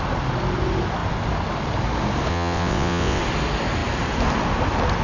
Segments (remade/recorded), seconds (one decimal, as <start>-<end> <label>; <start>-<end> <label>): 0.0-2.3 recorded; 2.3-3.2 remade; 3.2-5.0 recorded